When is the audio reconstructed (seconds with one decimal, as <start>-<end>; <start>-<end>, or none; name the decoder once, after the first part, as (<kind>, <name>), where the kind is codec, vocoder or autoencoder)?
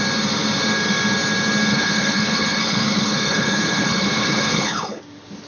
1.7-5.0 (codec, HILCodec)